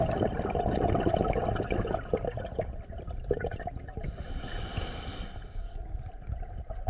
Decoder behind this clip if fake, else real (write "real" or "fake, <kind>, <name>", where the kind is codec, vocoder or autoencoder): fake, vocoder, BigVGAN v2